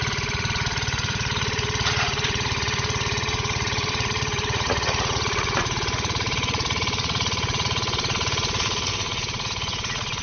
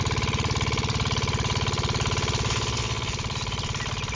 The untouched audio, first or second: second